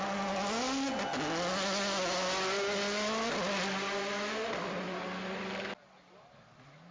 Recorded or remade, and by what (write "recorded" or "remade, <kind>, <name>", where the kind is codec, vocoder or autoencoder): recorded